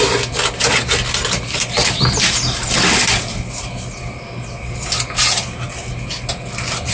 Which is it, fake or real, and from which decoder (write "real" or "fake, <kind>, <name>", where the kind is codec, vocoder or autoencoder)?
real